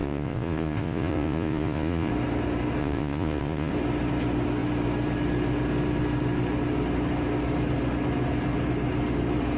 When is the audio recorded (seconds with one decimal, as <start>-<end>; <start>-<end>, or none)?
2.1-2.8; 3.7-9.6